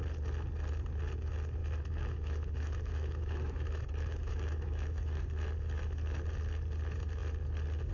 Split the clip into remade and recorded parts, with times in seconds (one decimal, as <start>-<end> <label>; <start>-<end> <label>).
0.0-1.6 recorded; 1.6-5.2 remade; 5.2-7.9 recorded